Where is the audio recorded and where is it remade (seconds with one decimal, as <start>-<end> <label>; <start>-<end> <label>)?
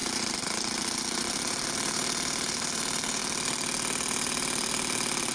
0.0-3.2 remade; 3.2-5.3 recorded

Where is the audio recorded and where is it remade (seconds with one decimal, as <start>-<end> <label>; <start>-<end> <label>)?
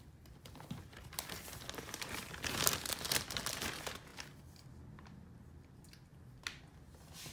0.0-7.3 recorded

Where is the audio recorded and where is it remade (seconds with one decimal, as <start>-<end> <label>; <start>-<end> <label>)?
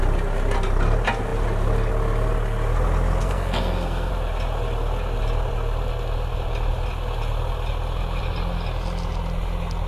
0.0-3.2 recorded; 3.2-4.1 remade; 4.1-9.9 recorded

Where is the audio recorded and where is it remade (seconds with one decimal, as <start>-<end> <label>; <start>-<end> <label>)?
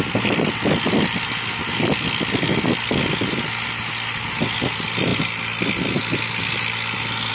0.0-7.3 recorded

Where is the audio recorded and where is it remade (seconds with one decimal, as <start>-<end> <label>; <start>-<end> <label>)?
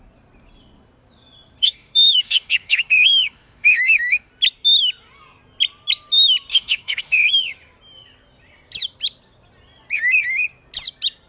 0.0-1.6 recorded; 1.6-4.3 remade; 4.3-6.5 recorded; 6.5-7.3 remade; 7.3-11.3 recorded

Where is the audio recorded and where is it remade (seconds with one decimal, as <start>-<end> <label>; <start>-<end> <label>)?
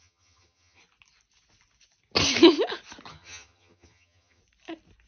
0.0-0.8 remade; 0.8-3.1 recorded; 3.1-4.4 remade; 4.4-5.1 recorded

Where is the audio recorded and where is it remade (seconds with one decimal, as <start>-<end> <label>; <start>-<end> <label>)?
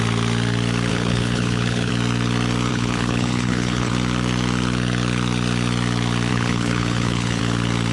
0.0-0.9 recorded; 0.9-1.9 remade; 1.9-2.7 recorded; 2.7-3.9 remade; 3.9-6.3 recorded; 6.3-7.4 remade; 7.4-7.9 recorded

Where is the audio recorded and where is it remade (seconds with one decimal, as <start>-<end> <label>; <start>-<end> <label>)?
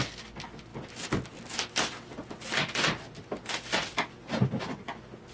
0.0-5.3 recorded